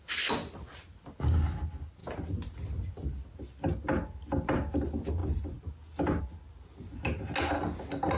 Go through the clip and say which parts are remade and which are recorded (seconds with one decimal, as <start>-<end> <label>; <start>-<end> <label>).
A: 0.0-8.2 recorded